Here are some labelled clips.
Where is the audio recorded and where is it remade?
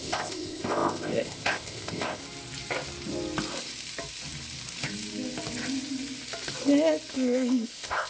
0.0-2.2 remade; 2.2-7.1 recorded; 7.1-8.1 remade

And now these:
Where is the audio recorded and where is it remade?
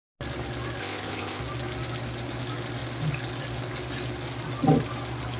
0.0-0.8 recorded; 0.8-1.4 remade; 1.4-5.4 recorded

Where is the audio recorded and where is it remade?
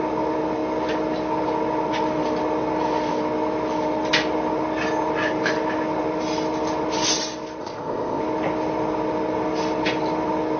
0.0-7.6 recorded; 7.6-8.2 remade; 8.2-10.6 recorded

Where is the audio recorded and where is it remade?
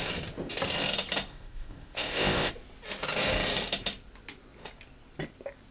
0.0-1.3 recorded; 1.3-2.5 remade; 2.5-5.7 recorded